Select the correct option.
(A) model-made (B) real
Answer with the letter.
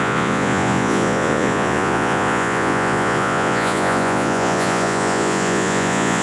A